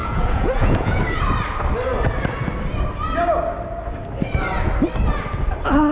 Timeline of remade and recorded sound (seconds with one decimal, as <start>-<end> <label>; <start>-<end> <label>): 0.0-1.0 remade; 1.0-5.9 recorded